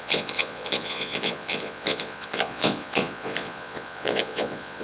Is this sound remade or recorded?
remade